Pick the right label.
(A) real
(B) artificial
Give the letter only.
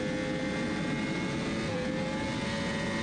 A